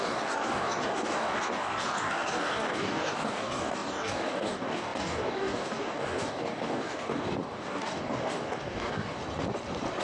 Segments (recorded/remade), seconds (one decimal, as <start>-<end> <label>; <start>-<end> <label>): 0.0-9.2 remade; 9.2-10.0 recorded